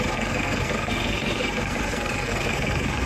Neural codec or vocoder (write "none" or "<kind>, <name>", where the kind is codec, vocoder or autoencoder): codec, SNAC